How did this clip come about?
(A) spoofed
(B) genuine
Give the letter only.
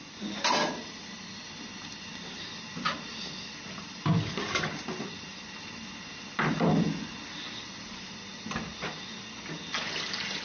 B